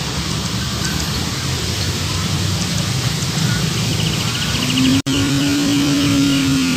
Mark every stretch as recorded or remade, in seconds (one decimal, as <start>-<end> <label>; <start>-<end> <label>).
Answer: 0.0-3.9 remade; 3.9-4.5 recorded; 4.5-6.8 remade